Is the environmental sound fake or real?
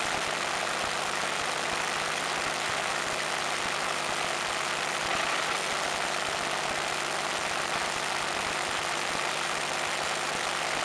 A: real